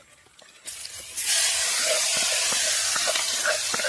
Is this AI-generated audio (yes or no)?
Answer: no